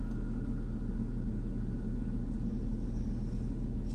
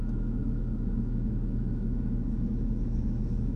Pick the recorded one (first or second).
first